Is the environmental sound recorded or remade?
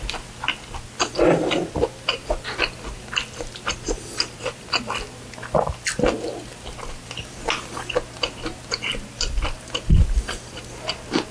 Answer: recorded